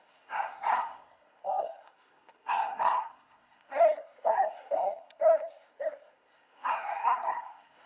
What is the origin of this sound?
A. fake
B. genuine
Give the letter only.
A